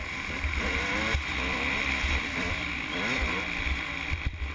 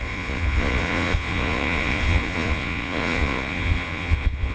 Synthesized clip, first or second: second